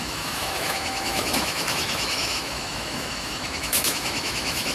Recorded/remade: remade